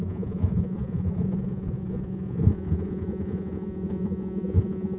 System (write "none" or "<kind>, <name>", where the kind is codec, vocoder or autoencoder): vocoder, Vocos